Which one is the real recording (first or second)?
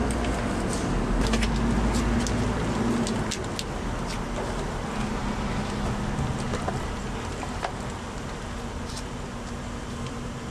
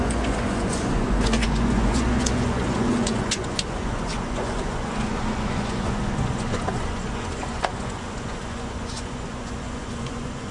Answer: first